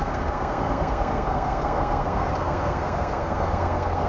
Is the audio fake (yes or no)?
yes